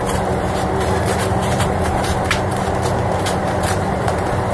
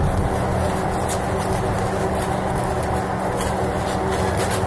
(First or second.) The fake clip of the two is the first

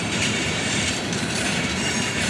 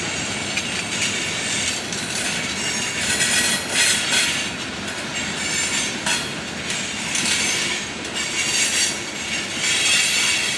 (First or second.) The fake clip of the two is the first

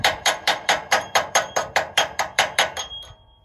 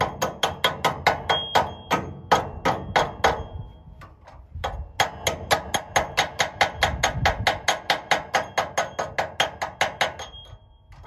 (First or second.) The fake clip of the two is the first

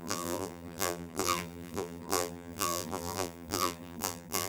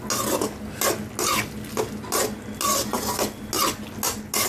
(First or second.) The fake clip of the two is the first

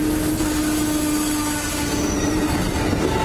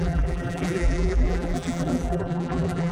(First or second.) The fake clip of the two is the second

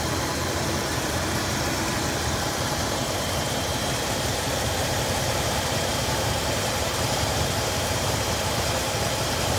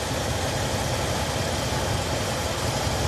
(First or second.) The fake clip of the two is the first